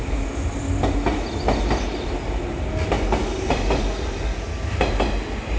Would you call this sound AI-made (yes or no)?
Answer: no